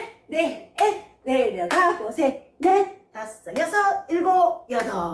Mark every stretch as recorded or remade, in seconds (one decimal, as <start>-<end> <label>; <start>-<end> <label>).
0.0-2.7 remade; 2.7-3.5 recorded; 3.5-5.1 remade

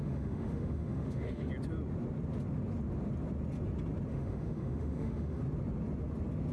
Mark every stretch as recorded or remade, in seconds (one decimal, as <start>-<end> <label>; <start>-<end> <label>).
0.0-1.5 remade; 1.5-4.1 recorded; 4.1-5.4 remade; 5.4-6.5 recorded

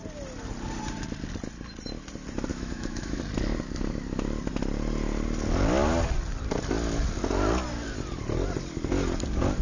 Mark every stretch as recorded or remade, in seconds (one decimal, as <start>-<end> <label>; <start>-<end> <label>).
0.0-2.5 recorded; 2.5-3.2 remade; 3.2-9.6 recorded